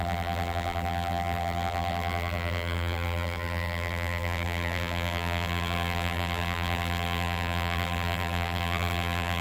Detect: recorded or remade remade